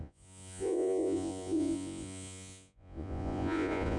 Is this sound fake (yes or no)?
yes